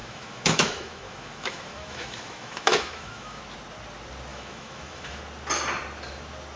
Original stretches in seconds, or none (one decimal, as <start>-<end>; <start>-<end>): 3.4-4.3; 5.2-6.6